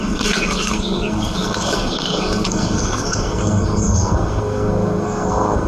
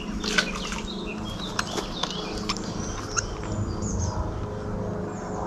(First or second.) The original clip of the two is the second